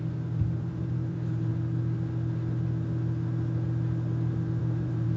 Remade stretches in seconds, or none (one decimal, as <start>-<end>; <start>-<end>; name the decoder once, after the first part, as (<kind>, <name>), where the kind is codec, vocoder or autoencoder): 0.0-1.5 (vocoder, BigVGAN v2); 4.6-5.2